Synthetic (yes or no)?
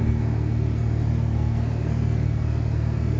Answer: yes